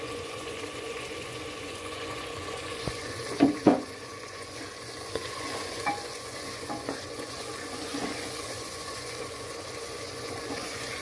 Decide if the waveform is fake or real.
fake